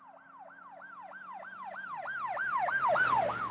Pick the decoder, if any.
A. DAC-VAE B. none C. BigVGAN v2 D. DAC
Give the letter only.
B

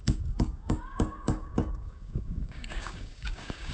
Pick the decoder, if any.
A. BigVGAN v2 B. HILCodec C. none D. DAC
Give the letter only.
D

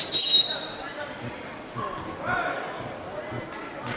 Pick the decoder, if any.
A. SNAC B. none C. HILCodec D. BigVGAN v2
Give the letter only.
B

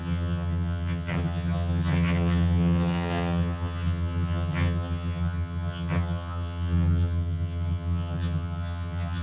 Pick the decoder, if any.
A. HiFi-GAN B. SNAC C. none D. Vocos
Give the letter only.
A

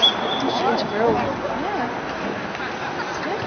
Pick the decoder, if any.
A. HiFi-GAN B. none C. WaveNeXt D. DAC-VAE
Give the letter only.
B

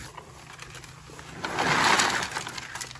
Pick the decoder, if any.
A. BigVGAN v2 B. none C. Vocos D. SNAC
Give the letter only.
B